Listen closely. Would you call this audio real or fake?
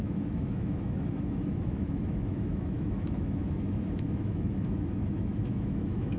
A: fake